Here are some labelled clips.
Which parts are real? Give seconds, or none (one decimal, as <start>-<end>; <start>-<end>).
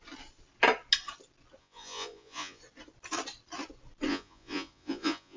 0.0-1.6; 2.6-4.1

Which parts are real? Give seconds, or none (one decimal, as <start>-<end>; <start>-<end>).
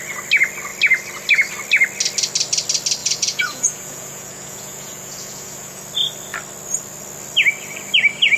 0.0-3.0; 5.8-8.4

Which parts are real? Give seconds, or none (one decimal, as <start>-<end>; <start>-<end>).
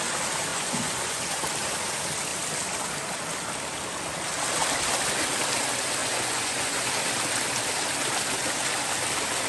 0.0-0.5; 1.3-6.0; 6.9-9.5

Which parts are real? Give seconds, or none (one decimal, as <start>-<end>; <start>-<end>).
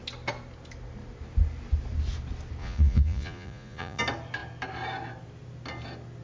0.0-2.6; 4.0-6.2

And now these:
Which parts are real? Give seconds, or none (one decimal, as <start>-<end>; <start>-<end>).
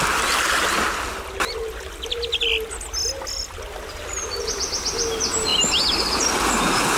0.0-7.0